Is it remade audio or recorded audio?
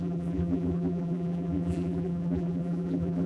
remade